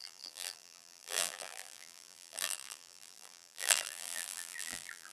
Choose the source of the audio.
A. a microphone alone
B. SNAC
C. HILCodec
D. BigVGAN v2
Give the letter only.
D